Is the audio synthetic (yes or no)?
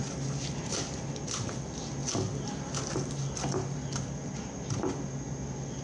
no